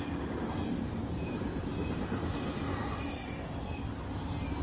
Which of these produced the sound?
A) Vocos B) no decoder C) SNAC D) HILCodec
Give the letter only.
B